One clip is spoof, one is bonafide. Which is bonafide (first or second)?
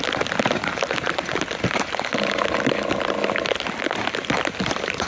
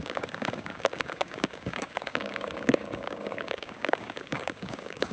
first